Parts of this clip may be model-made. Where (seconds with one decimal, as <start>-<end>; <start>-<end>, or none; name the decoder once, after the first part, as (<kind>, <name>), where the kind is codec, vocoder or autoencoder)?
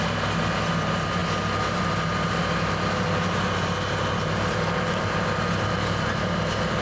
none